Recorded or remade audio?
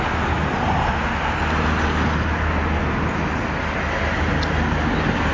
recorded